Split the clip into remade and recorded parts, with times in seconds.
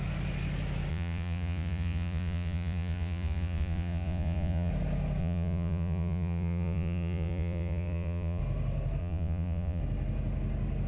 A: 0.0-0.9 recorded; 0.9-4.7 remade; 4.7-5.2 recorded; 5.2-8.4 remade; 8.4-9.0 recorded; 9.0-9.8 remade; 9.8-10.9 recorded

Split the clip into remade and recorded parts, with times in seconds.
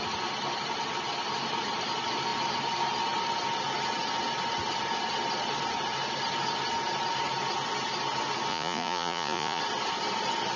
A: 0.0-8.5 recorded; 8.5-9.6 remade; 9.6-10.6 recorded